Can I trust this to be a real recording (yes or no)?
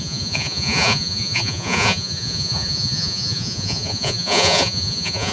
no